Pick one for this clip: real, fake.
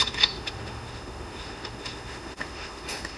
fake